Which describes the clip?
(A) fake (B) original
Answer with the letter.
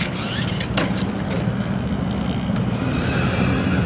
B